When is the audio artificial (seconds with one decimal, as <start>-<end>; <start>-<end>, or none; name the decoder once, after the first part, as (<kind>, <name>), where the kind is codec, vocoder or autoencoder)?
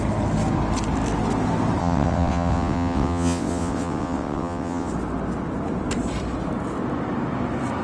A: 1.8-4.9 (vocoder, WaveNeXt)